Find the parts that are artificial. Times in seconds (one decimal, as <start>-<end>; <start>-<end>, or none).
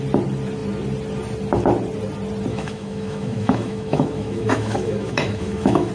2.5-5.9